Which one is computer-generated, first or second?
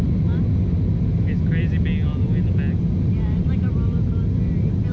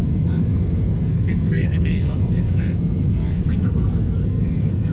second